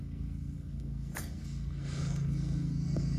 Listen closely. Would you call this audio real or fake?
fake